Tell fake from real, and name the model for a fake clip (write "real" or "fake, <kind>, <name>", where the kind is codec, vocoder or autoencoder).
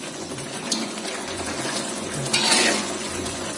fake, vocoder, Vocos